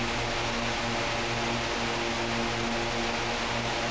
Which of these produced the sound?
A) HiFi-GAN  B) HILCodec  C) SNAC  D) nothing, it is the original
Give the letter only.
D